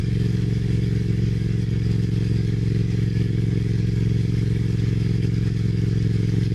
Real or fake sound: fake